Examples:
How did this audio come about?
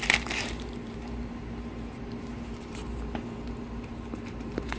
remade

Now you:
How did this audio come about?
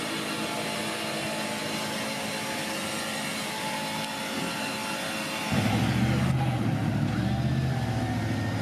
recorded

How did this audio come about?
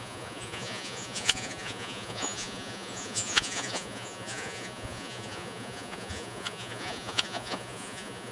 remade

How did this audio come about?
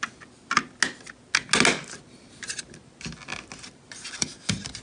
recorded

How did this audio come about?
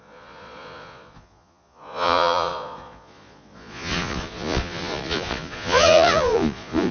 remade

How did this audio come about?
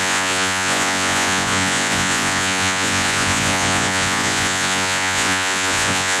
remade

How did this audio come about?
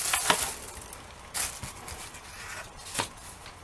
recorded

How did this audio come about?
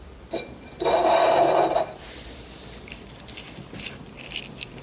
remade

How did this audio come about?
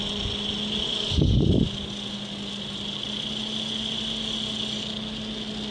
recorded